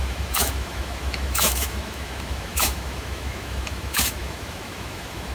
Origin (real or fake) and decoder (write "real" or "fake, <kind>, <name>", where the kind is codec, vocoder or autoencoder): fake, autoencoder, DAC-VAE